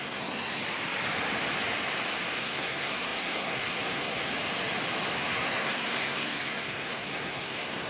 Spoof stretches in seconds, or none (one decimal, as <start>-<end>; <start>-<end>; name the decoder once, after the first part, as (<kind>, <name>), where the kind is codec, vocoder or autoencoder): 0.0-0.6 (codec, SNAC); 2.4-4.3; 5.1-7.9